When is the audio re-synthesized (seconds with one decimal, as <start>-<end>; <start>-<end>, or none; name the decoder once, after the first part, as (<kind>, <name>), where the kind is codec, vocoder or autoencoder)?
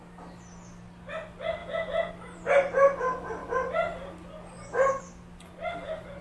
1.6-2.1 (vocoder, Vocos)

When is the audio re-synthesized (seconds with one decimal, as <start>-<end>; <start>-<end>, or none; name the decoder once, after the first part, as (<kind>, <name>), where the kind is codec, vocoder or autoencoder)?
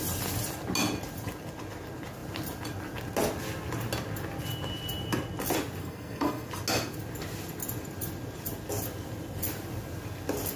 5.8-6.5 (codec, SNAC)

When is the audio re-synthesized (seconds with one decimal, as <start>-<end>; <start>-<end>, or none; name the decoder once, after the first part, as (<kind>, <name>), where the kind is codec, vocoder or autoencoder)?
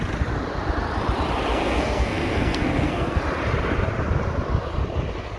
1.5-3.2 (codec, SNAC)